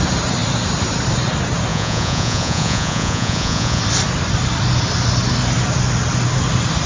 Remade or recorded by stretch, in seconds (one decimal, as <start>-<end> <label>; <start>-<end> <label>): 0.0-1.7 recorded; 1.7-3.8 remade; 3.8-6.9 recorded